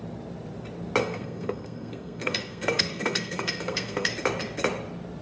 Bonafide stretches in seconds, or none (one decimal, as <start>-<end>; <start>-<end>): 0.0-1.0; 4.1-5.2